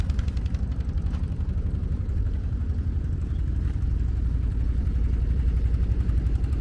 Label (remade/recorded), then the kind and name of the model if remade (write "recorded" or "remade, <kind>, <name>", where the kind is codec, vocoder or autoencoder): remade, vocoder, BigVGAN v2